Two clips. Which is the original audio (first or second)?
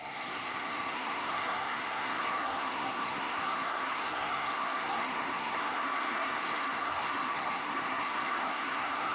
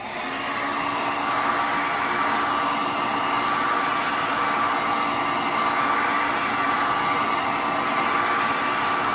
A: second